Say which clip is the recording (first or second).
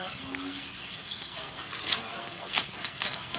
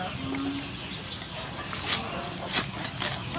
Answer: second